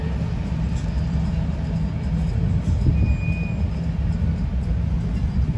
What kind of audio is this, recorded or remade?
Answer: recorded